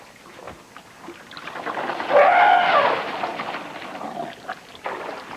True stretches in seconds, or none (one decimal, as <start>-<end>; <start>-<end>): 0.0-5.4